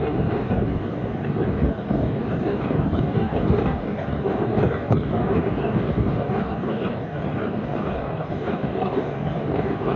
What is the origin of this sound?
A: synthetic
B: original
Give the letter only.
A